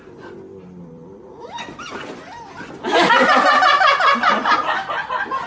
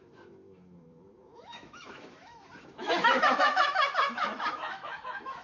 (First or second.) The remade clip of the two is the second